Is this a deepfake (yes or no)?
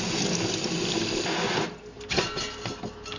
no